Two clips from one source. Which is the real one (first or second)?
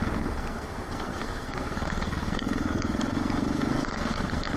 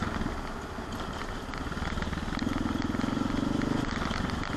second